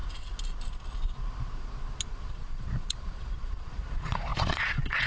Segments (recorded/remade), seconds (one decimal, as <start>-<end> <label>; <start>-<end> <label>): 0.0-2.3 recorded; 2.3-5.1 remade